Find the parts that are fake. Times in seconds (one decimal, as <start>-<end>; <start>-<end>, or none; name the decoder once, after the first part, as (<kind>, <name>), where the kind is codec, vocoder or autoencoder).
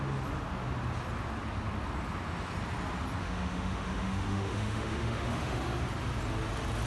3.2-5.8 (autoencoder, DAC-VAE)